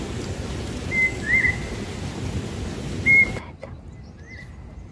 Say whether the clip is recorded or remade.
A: recorded